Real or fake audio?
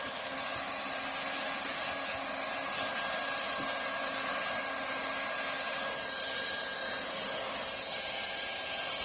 real